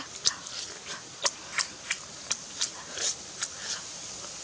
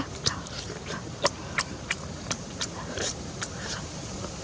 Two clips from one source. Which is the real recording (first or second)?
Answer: first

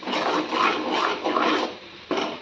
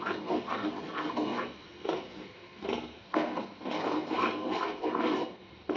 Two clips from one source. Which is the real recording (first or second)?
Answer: first